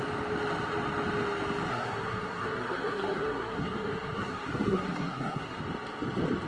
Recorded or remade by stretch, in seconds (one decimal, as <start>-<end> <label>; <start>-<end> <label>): 0.0-1.7 recorded; 1.7-5.6 remade; 5.6-6.5 recorded